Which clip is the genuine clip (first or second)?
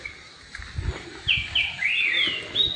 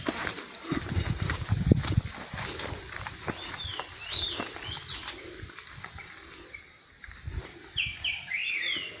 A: first